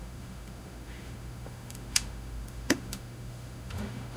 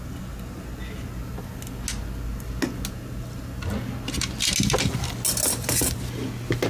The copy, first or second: first